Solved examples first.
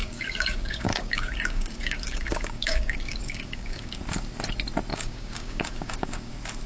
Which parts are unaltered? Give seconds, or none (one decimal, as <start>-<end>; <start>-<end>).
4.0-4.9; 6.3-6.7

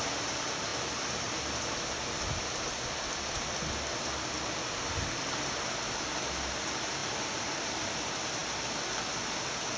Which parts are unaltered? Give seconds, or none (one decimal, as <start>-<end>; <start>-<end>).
0.0-9.8

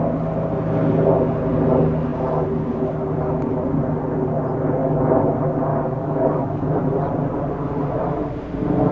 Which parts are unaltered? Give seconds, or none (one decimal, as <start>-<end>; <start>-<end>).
0.0-4.8; 5.3-5.7; 6.8-8.9

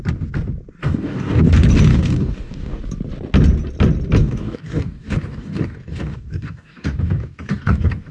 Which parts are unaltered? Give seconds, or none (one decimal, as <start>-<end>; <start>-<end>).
0.0-0.8; 1.4-1.9; 2.8-4.2

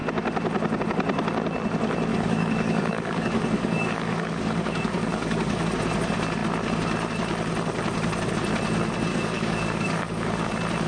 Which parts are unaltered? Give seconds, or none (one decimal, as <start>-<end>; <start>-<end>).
0.0-2.1; 5.6-9.1; 10.5-10.9

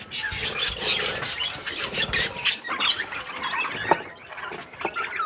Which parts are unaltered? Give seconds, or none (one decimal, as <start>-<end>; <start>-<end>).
0.0-5.3